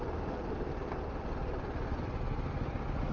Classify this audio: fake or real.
real